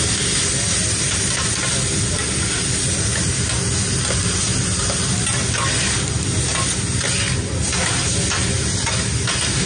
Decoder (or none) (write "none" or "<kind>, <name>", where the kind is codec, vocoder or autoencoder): none